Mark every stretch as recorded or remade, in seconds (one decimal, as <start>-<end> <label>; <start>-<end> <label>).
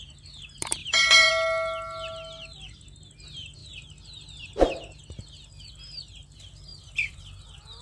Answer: 0.0-0.8 recorded; 0.8-1.3 remade; 1.3-6.7 recorded; 6.7-7.2 remade; 7.2-7.8 recorded